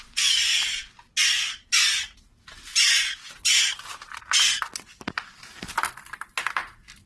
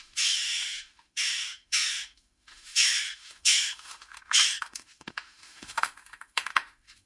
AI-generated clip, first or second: second